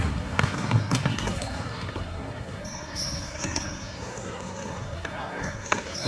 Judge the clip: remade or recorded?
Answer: remade